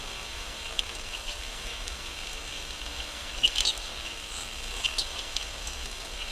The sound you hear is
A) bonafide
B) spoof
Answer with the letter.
B